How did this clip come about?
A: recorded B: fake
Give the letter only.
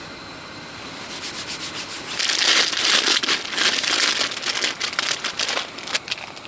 A